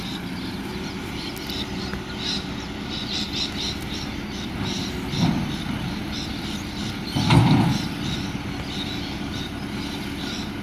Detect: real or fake real